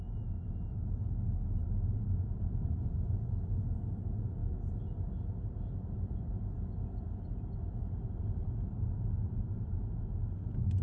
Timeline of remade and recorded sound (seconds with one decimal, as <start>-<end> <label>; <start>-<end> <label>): 0.0-10.8 recorded